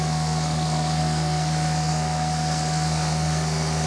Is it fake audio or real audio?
fake